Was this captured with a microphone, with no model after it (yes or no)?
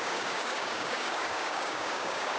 no